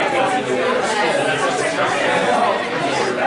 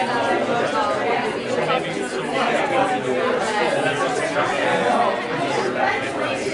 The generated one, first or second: first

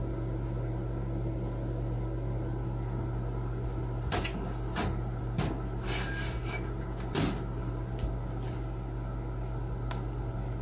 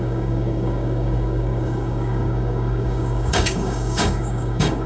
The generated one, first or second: second